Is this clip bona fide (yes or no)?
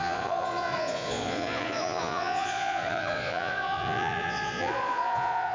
no